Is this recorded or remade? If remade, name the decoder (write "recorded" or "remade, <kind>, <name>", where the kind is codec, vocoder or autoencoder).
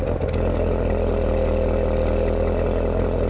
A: recorded